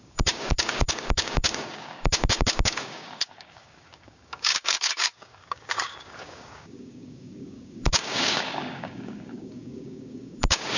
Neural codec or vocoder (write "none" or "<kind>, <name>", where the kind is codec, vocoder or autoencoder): codec, DAC